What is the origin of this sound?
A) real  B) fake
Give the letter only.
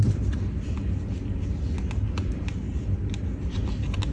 A